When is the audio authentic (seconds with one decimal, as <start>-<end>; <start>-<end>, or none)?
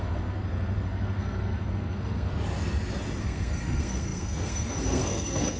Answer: 2.3-3.2